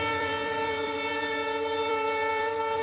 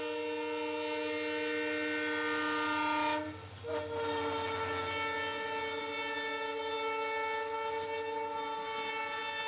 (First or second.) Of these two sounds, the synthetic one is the first